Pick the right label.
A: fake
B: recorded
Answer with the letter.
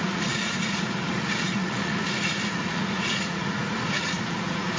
A